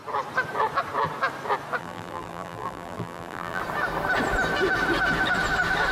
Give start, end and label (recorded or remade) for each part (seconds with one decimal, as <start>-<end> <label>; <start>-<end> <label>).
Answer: 0.0-1.8 recorded; 1.8-3.6 remade; 3.6-5.9 recorded